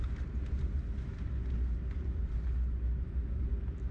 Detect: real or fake real